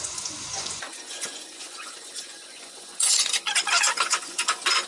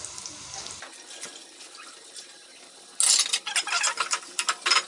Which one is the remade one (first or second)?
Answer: first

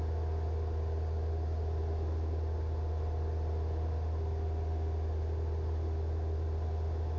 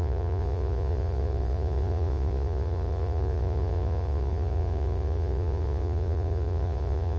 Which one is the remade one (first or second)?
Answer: second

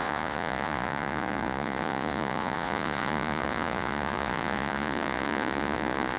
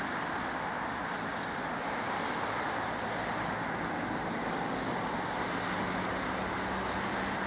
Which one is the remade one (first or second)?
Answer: first